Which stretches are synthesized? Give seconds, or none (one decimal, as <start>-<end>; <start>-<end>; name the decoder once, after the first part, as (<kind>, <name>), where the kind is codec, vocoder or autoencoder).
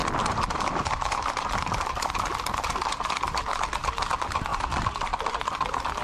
none